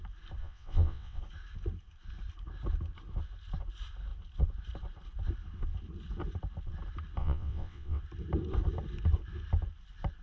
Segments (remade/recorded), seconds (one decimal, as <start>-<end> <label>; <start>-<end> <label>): 0.0-0.4 recorded; 0.4-1.2 remade; 1.2-7.2 recorded; 7.2-8.0 remade; 8.0-10.2 recorded